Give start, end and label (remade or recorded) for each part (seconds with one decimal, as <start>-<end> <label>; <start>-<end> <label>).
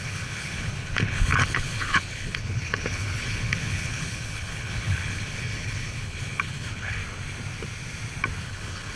0.0-7.0 remade; 7.0-8.4 recorded; 8.4-9.0 remade